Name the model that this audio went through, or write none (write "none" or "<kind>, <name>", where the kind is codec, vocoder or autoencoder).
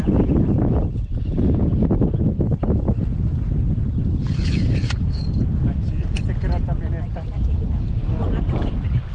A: none